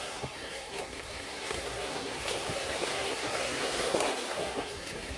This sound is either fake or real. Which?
fake